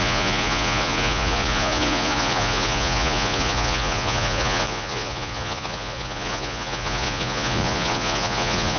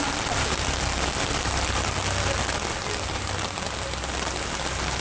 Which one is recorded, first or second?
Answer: second